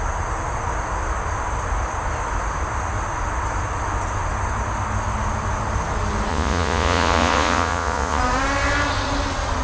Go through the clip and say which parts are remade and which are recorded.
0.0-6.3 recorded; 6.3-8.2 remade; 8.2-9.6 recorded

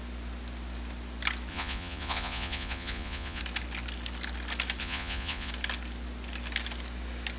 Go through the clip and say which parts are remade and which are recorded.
0.0-1.5 recorded; 1.5-3.4 remade; 3.4-4.8 recorded; 4.8-5.5 remade; 5.5-7.4 recorded

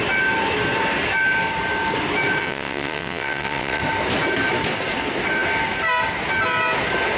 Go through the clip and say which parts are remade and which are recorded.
0.0-2.4 recorded; 2.4-3.8 remade; 3.8-7.2 recorded

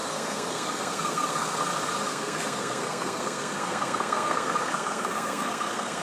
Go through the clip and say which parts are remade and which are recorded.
0.0-1.7 remade; 1.7-2.1 recorded; 2.1-6.0 remade

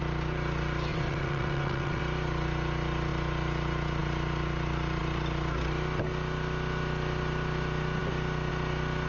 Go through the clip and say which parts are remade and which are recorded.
0.0-0.9 recorded; 0.9-2.0 remade; 2.0-9.1 recorded

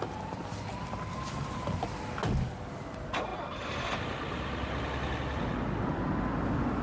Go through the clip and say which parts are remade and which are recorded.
0.0-6.8 recorded